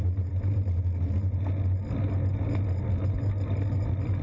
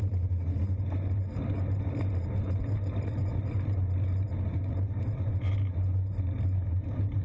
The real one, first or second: first